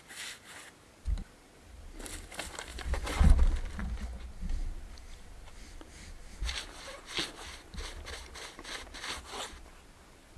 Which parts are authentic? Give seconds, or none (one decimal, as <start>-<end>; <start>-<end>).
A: 0.0-2.7; 3.3-3.8; 4.4-10.4